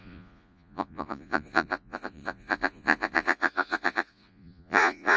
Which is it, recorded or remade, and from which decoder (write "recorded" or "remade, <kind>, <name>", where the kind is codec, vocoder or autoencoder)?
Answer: remade, vocoder, Vocos